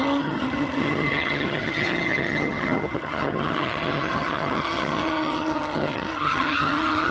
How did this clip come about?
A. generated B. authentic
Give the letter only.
A